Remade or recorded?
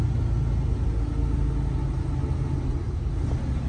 recorded